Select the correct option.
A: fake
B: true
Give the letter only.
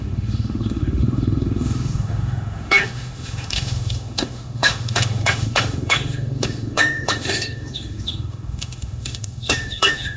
A